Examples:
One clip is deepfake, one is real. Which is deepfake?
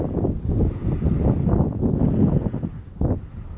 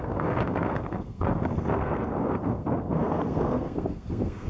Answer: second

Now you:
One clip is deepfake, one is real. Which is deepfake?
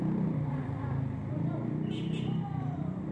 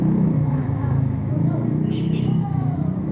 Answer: second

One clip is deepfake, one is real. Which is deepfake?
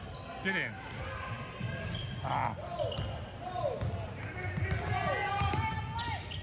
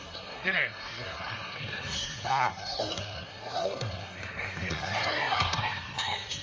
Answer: second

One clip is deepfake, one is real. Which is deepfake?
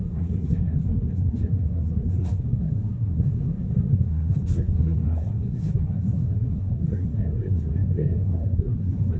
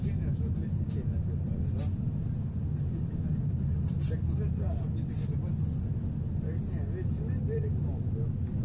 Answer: first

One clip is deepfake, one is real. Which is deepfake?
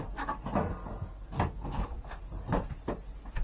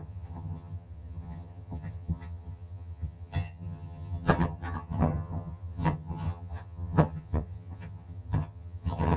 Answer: second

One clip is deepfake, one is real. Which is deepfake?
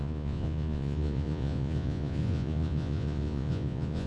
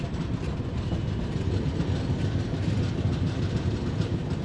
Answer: first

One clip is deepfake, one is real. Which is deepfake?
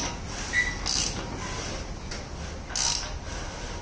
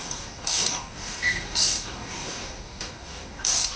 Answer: second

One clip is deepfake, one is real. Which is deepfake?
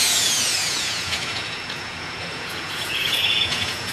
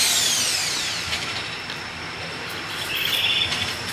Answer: first